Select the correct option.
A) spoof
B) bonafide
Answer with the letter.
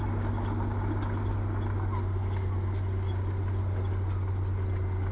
B